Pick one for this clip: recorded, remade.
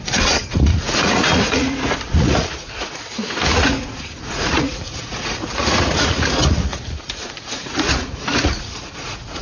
remade